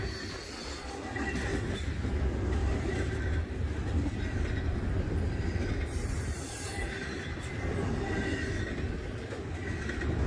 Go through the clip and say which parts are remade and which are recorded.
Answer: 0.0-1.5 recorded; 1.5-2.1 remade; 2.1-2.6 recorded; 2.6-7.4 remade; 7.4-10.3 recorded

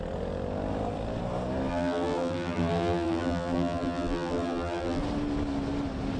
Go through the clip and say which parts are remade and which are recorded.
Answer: 0.0-1.7 recorded; 1.7-5.0 remade; 5.0-6.2 recorded

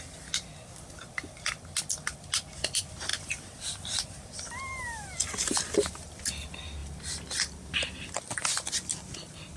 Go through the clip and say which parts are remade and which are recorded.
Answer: 0.0-3.1 recorded; 3.1-3.6 remade; 3.6-6.8 recorded; 6.8-8.1 remade; 8.1-9.6 recorded

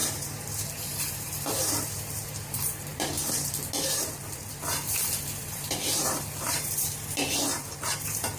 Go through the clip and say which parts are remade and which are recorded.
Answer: 0.0-3.5 remade; 3.5-3.9 recorded; 3.9-8.4 remade

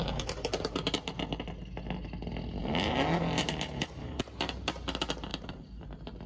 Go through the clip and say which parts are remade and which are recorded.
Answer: 0.0-2.6 recorded; 2.6-4.2 remade; 4.2-5.3 recorded; 5.3-5.8 remade; 5.8-6.3 recorded

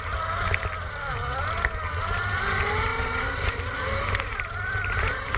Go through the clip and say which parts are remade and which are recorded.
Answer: 0.0-2.9 recorded; 2.9-4.7 remade; 4.7-5.4 recorded

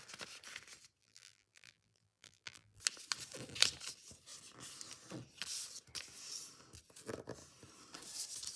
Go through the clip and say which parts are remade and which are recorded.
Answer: 0.0-1.0 recorded; 1.0-2.8 remade; 2.8-8.6 recorded

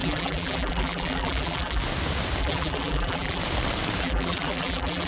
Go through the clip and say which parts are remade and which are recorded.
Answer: 0.0-1.8 remade; 1.8-2.4 recorded; 2.4-3.4 remade; 3.4-4.0 recorded; 4.0-5.1 remade